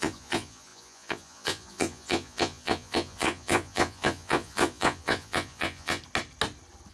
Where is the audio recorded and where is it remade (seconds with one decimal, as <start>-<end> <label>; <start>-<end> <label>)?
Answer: 0.0-6.0 remade; 6.0-6.9 recorded